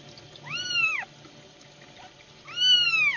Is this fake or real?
real